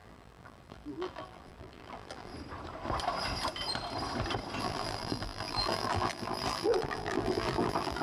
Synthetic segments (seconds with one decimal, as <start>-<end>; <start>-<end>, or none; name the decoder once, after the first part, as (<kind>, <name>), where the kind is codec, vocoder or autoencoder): 0.0-2.3 (vocoder, BigVGAN v2); 4.6-8.0